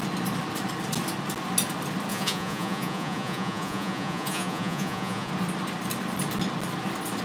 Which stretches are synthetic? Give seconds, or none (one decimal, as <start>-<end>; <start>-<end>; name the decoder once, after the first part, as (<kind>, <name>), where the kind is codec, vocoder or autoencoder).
2.1-5.3 (vocoder, Vocos)